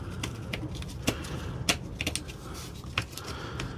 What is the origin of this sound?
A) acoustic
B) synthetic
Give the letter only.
A